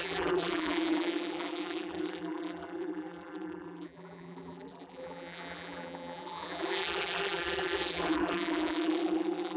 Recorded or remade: remade